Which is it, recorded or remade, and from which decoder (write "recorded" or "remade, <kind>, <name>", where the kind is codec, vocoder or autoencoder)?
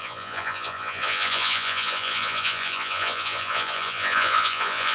remade, vocoder, Vocos